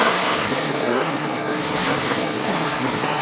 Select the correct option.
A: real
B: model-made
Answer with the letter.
B